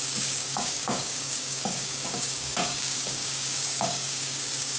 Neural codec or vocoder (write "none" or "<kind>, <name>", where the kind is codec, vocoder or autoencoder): codec, DAC